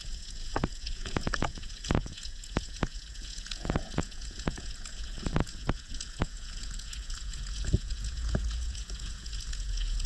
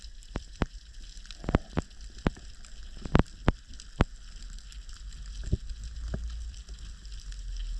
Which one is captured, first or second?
second